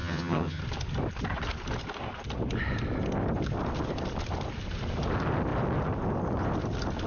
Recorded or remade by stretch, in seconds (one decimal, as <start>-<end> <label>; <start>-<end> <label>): 0.0-0.6 remade; 0.6-7.1 recorded

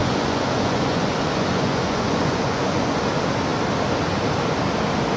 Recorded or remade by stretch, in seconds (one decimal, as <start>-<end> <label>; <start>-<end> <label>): 0.0-3.0 remade; 3.0-5.2 recorded

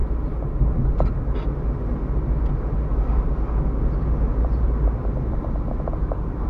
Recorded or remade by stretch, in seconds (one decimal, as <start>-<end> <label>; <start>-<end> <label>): 0.0-3.9 recorded; 3.9-6.5 remade

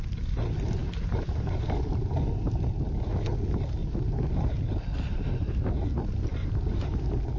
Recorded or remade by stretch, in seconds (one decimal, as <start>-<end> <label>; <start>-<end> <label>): 0.0-0.8 recorded; 0.8-1.6 remade; 1.6-3.8 recorded; 3.8-5.7 remade; 5.7-6.4 recorded; 6.4-7.0 remade; 7.0-7.4 recorded

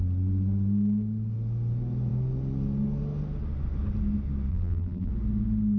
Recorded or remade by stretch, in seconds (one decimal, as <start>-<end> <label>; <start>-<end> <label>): 0.0-4.5 recorded; 4.5-5.1 remade; 5.1-5.8 recorded

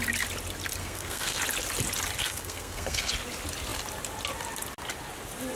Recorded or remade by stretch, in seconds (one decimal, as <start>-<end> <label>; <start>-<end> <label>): 0.0-0.8 recorded; 0.8-1.4 remade; 1.4-2.2 recorded; 2.2-3.1 remade; 3.1-5.6 recorded

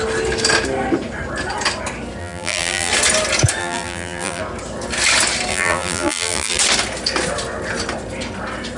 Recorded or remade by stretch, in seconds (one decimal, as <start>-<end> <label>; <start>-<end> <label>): 0.0-2.2 recorded; 2.2-2.9 remade; 2.9-3.6 recorded; 3.6-4.4 remade; 4.4-5.5 recorded; 5.5-6.6 remade; 6.6-8.8 recorded

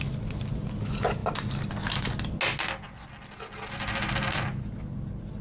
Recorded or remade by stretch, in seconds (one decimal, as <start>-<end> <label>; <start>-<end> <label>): 0.0-5.4 recorded